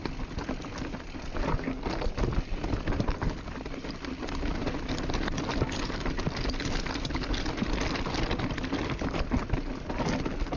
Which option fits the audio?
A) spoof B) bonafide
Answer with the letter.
B